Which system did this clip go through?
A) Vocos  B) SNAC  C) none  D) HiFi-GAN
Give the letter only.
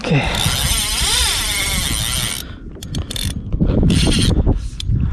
C